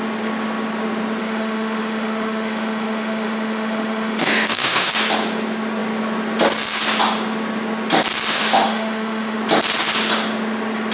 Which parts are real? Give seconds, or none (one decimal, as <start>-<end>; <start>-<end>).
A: 0.0-1.2; 4.9-8.3; 9.4-10.9